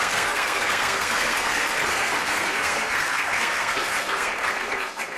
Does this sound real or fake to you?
fake